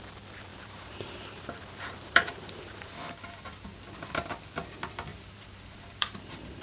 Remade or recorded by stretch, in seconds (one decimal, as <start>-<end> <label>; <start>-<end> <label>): 0.0-0.5 recorded; 0.5-3.4 remade; 3.4-5.1 recorded; 5.1-6.6 remade